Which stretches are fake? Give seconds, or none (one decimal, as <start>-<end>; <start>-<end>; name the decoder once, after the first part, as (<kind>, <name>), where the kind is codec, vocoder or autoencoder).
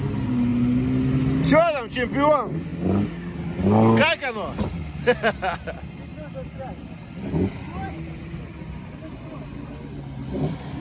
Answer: none